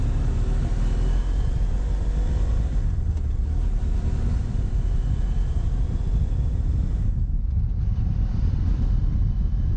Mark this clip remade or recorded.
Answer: recorded